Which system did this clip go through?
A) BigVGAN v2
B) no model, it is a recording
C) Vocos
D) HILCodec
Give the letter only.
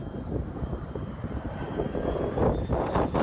A